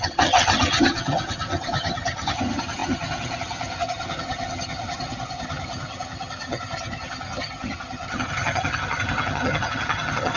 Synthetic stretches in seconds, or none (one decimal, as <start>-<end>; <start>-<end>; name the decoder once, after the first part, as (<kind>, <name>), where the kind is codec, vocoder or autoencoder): 0.0-10.4 (vocoder, HiFi-GAN)